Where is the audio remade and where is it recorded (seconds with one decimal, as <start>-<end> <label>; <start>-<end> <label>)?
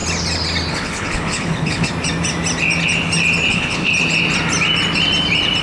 0.0-0.7 recorded; 0.7-1.9 remade; 1.9-3.5 recorded; 3.5-3.9 remade; 3.9-5.6 recorded